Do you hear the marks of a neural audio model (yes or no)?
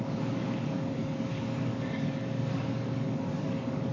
yes